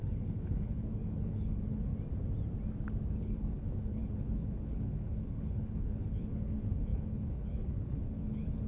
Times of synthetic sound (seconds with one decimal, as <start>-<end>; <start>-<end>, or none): 0.0-1.9; 3.1-8.7